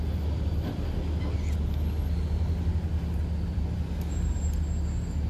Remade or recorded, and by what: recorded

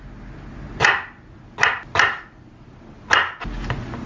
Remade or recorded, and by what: recorded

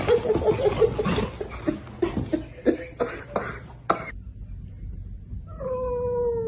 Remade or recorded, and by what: recorded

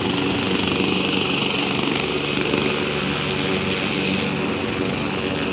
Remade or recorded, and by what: recorded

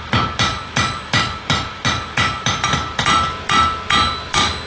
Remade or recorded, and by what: remade, vocoder, BigVGAN v2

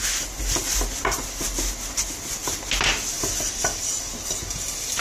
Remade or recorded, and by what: recorded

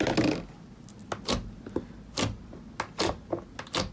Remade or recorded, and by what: recorded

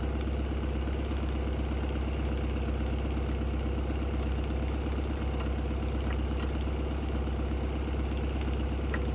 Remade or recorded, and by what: recorded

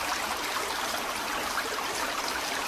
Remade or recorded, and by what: recorded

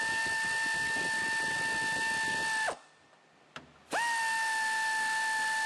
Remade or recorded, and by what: recorded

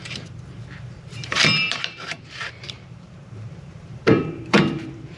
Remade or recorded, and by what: remade, vocoder, BigVGAN v2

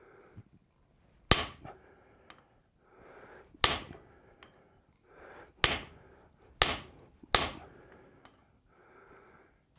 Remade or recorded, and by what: recorded